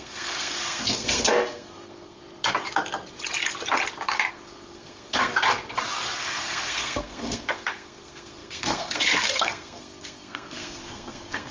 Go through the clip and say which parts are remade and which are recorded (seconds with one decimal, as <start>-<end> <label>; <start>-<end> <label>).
0.0-2.2 remade; 2.2-4.3 recorded; 4.3-5.3 remade; 5.3-6.2 recorded; 6.2-11.5 remade